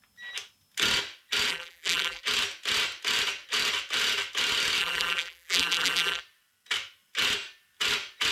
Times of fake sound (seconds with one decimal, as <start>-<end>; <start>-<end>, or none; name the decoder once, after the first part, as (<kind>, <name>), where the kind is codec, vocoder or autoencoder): 1.5-2.2 (vocoder, BigVGAN v2); 4.8-6.2